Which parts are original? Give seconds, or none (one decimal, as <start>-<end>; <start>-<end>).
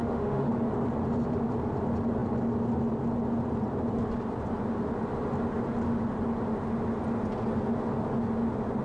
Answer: 0.5-8.8